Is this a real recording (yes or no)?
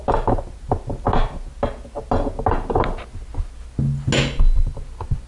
yes